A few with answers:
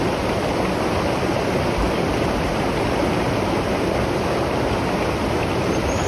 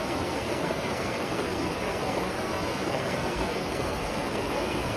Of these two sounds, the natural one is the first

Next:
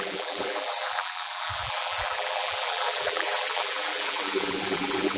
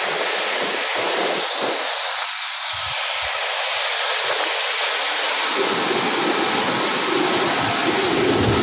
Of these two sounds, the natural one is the second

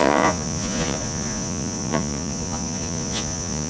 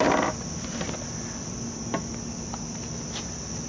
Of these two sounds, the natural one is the second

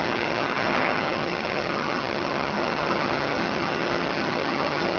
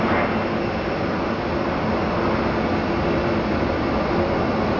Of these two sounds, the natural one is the second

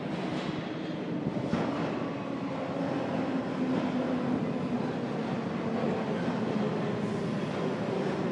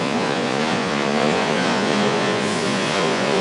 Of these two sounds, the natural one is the first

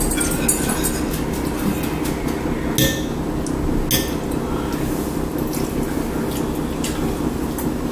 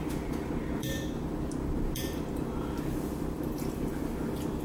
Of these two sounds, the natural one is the first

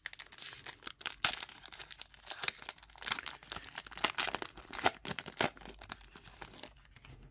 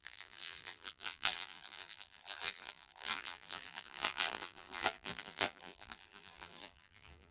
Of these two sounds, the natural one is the first